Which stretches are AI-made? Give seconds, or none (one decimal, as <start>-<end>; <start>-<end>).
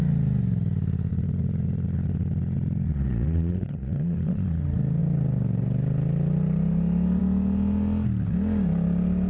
1.1-4.6